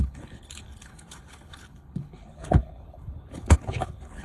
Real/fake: fake